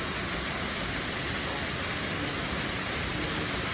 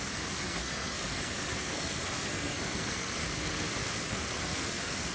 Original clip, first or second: first